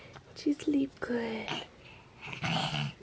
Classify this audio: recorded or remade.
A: recorded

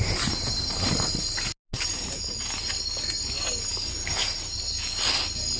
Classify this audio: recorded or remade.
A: recorded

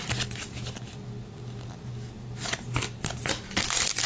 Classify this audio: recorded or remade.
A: recorded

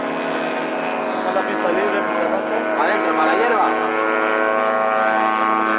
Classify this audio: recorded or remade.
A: recorded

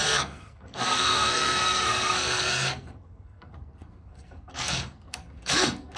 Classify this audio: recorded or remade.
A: remade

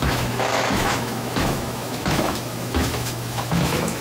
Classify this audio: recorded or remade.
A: remade